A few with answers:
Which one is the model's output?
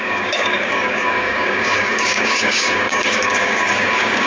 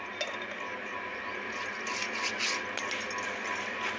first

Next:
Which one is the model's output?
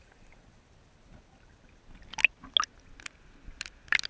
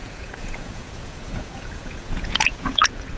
second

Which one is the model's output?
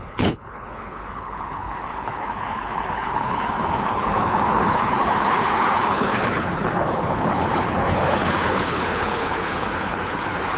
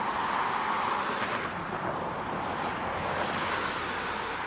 first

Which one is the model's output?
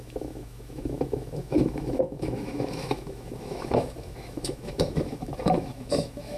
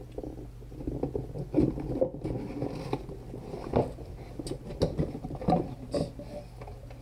first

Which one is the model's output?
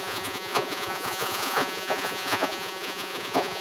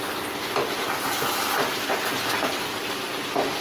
first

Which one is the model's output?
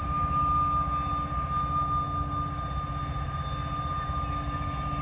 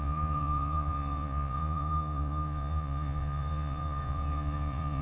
second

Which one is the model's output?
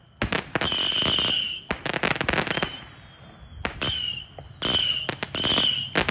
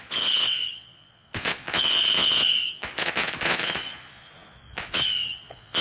second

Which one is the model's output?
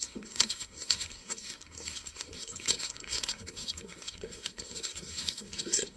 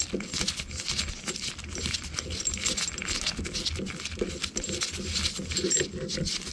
first